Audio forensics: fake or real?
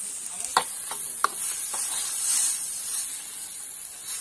real